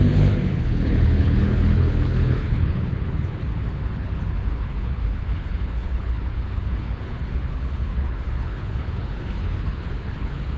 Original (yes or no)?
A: no